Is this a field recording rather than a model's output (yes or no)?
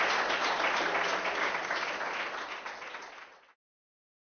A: yes